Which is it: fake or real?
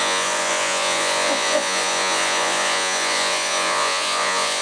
fake